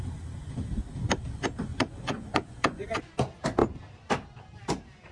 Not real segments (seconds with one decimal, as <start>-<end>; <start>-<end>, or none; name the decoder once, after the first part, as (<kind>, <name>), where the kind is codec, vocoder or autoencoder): 1.7-3.1 (vocoder, Vocos)